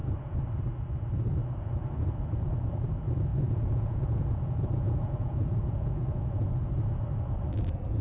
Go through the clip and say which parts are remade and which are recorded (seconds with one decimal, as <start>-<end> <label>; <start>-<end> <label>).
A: 0.0-3.3 recorded; 3.3-6.7 remade; 6.7-8.0 recorded